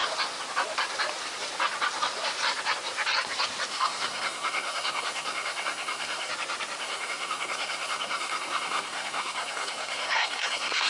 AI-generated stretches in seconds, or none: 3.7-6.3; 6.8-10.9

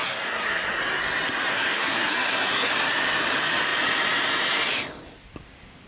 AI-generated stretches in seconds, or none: 0.0-0.8; 1.5-2.7

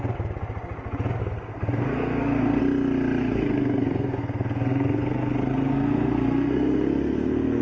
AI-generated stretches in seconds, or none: 1.2-2.6; 3.2-7.6